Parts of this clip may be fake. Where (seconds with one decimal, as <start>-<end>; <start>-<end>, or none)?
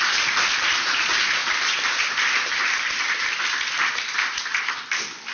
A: none